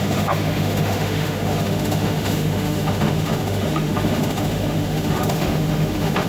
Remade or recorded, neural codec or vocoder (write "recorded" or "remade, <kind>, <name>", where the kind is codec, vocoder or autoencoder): remade, autoencoder, DAC-VAE